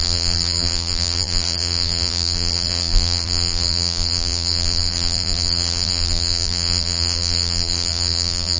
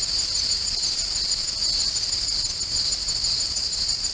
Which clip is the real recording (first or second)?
second